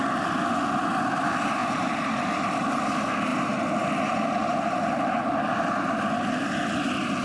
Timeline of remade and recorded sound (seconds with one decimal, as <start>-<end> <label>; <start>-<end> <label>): 0.0-7.2 recorded